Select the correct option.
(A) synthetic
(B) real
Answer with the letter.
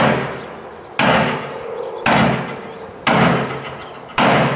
B